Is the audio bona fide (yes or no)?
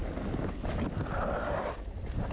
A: yes